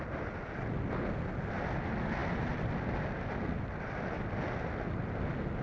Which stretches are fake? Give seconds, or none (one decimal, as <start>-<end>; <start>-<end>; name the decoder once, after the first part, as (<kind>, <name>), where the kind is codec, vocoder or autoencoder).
none